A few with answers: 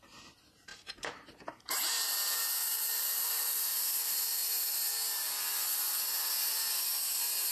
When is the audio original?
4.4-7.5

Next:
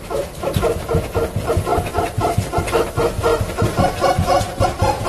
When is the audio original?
0.0-5.1

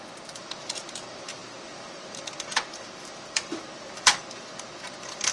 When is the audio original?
none

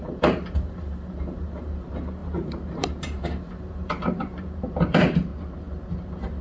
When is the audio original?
5.3-5.9

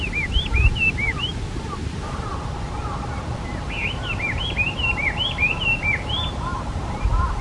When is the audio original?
2.3-3.2

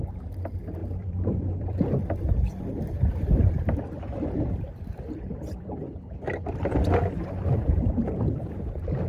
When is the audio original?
0.0-0.8; 4.5-4.9; 7.2-9.1